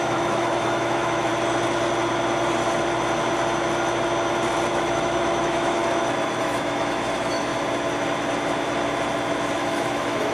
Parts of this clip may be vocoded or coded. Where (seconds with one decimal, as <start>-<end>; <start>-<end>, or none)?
0.0-1.3; 4.7-5.8; 6.4-7.5; 9.5-10.3